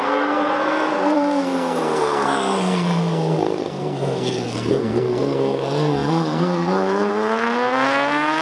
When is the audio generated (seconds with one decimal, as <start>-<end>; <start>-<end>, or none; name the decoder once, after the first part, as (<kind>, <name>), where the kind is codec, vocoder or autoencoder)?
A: 0.0-8.4 (codec, SNAC)